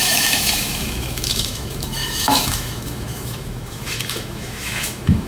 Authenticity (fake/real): fake